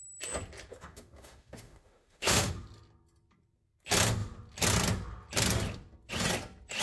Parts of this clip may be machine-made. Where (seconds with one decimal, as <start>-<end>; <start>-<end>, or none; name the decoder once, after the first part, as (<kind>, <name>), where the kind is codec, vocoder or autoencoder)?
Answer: 0.7-2.5 (autoencoder, DAC-VAE)